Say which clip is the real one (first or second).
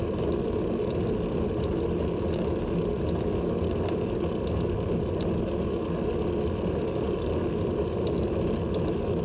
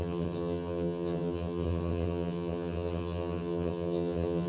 first